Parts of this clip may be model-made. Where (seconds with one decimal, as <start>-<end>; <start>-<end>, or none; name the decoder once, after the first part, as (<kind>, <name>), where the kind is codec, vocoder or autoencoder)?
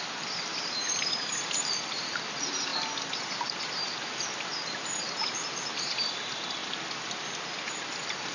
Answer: 0.0-6.6 (vocoder, BigVGAN v2); 7.9-8.3